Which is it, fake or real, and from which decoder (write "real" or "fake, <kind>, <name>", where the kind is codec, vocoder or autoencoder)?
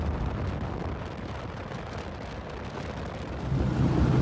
real